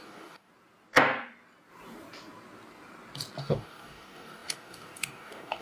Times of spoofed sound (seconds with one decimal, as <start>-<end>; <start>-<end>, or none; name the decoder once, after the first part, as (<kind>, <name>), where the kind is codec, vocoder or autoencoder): 0.0-0.5 (codec, DAC); 3.4-5.6